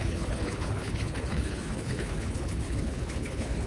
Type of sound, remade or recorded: remade